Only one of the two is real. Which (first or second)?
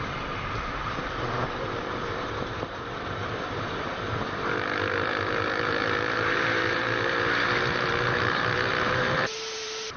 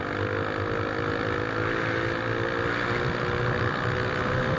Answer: second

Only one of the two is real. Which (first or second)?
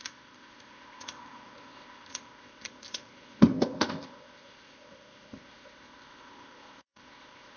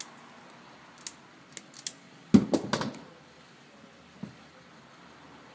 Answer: second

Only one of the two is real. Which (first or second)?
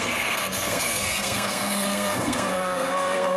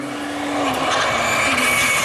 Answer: second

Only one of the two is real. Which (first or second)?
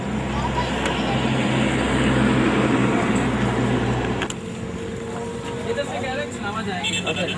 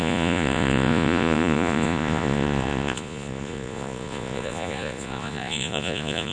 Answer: first